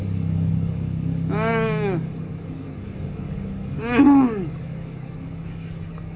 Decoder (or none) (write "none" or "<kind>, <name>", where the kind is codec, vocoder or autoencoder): codec, DAC